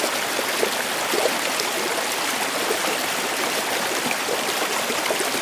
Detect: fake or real real